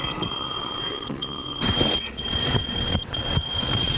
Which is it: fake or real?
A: fake